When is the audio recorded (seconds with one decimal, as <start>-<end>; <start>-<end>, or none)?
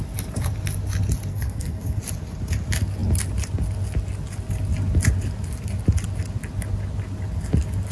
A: 0.0-1.3; 2.0-7.9